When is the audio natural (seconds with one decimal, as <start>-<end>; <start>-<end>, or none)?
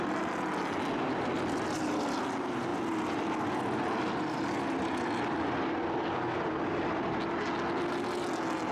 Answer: 0.0-8.7